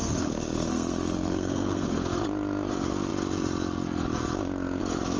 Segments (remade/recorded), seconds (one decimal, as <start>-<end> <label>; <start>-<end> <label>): 0.0-2.2 remade; 2.2-5.2 recorded